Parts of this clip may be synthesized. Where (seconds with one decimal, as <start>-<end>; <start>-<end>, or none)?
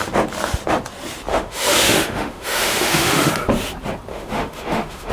1.3-3.3; 4.1-5.1